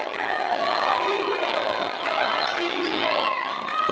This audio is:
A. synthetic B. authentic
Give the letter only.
A